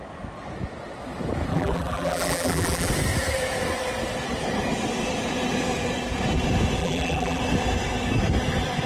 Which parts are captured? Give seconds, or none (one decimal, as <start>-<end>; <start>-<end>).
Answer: 0.0-1.5; 2.9-6.8; 7.4-8.9